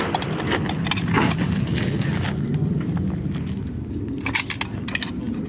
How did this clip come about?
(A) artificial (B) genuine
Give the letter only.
B